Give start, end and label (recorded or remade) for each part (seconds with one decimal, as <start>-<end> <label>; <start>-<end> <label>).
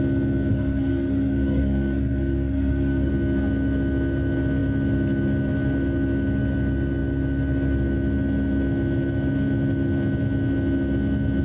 0.0-0.5 recorded; 0.5-3.1 remade; 3.1-11.4 recorded